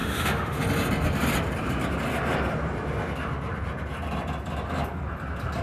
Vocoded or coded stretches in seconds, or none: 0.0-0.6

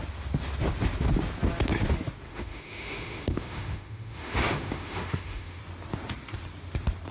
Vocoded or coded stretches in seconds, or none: 2.3-5.6

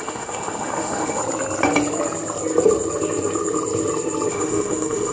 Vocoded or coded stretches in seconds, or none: 0.0-1.2; 4.3-5.1